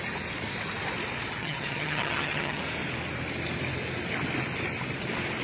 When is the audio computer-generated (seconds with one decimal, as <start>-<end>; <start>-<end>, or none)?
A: 1.4-2.6